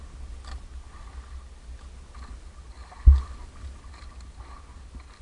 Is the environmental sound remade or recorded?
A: recorded